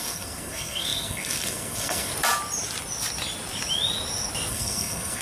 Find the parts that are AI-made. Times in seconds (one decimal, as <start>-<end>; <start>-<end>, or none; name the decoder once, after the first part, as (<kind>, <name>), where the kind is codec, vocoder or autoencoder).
0.0-2.1 (codec, SNAC); 4.5-5.2